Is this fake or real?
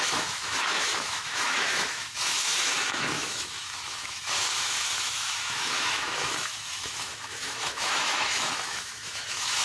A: fake